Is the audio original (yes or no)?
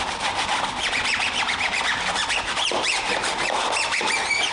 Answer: no